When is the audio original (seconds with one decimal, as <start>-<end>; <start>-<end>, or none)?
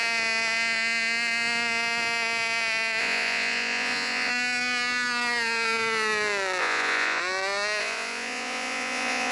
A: 0.0-3.0; 4.3-6.6; 7.2-7.8